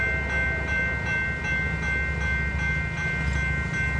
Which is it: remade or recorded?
recorded